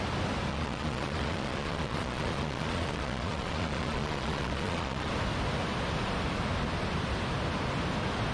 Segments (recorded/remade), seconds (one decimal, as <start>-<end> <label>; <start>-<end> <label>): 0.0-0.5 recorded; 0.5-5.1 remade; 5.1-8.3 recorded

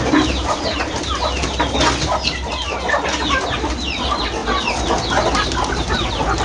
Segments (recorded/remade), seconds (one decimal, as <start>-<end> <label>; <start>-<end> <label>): 0.0-6.4 recorded

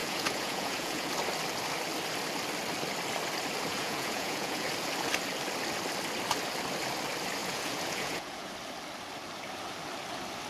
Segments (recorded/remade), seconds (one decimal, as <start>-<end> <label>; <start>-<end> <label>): 0.0-1.1 remade; 1.1-3.7 recorded; 3.7-4.7 remade; 4.7-7.4 recorded; 7.4-8.5 remade; 8.5-10.5 recorded

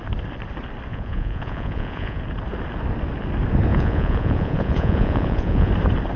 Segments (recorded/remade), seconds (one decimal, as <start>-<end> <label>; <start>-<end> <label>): 0.0-0.9 recorded; 0.9-2.2 remade; 2.2-3.7 recorded; 3.7-5.7 remade; 5.7-6.2 recorded

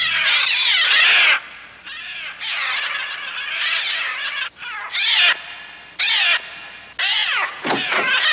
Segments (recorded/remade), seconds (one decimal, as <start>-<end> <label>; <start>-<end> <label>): 0.0-7.2 recorded; 7.2-7.8 remade; 7.8-8.3 recorded

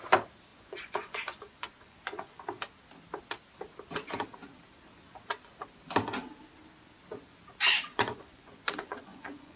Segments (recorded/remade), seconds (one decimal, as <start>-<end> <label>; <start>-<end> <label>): 0.0-0.5 recorded; 0.5-2.4 remade; 2.4-7.9 recorded; 7.9-9.6 remade